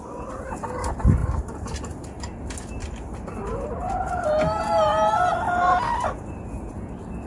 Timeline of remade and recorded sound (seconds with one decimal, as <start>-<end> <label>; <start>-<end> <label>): 0.0-7.3 recorded